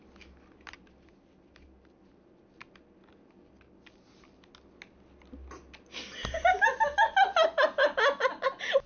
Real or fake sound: real